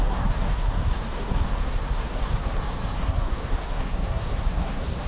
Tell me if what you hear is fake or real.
fake